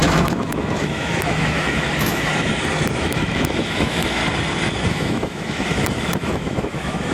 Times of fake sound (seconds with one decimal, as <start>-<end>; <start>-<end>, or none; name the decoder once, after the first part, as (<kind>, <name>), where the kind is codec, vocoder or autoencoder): 0.0-2.3 (autoencoder, DAC-VAE); 3.0-4.2; 4.9-7.1